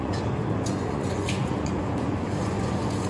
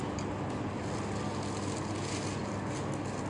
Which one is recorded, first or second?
second